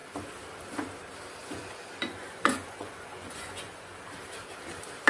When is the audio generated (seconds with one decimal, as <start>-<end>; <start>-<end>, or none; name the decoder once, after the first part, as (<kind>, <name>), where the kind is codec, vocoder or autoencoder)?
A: 1.4-3.9 (vocoder, Vocos)